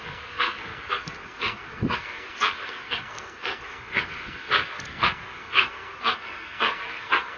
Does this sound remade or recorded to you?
remade